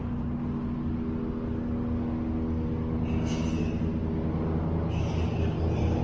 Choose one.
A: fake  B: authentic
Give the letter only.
B